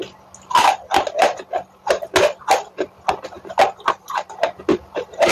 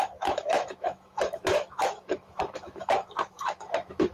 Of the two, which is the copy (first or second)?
second